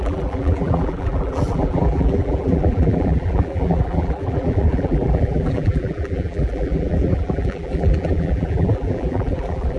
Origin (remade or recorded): remade